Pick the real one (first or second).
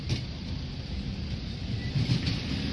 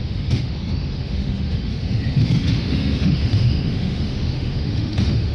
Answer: first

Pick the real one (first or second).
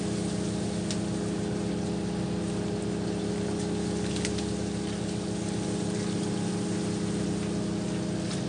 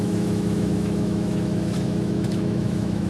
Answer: first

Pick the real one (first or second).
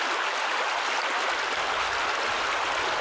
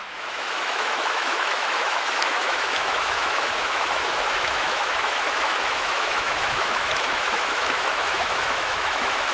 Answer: first